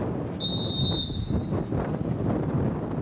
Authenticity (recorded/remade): recorded